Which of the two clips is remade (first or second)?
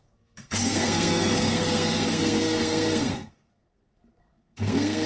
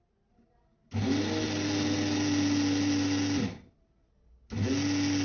first